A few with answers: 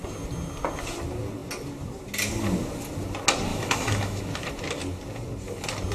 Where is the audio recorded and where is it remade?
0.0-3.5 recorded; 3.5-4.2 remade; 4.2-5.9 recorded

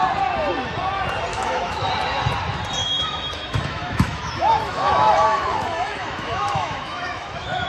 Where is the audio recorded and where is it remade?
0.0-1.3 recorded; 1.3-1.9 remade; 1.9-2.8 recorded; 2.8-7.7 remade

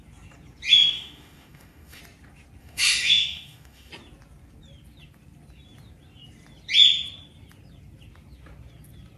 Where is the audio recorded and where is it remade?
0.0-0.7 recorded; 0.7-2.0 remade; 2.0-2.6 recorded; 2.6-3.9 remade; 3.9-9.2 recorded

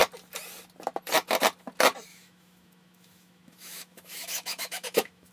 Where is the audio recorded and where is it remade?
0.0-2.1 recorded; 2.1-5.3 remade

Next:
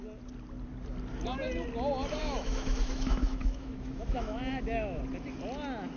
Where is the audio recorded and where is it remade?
0.0-2.2 recorded; 2.2-5.0 remade; 5.0-6.0 recorded

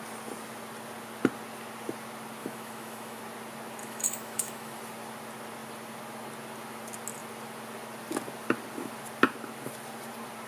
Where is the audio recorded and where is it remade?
0.0-2.4 recorded; 2.4-3.2 remade; 3.2-3.8 recorded; 3.8-4.8 remade; 4.8-10.5 recorded

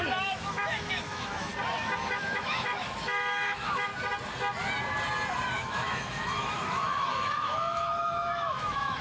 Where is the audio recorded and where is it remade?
0.0-1.5 remade; 1.5-2.2 recorded; 2.2-3.9 remade; 3.9-5.5 recorded; 5.5-9.0 remade

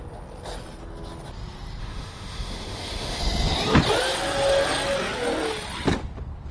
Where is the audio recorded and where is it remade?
0.0-1.8 recorded; 1.8-3.2 remade; 3.2-6.5 recorded